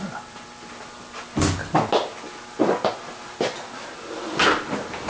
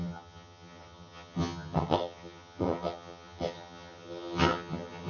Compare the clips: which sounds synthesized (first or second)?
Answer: second